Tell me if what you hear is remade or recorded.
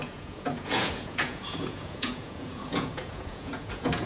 remade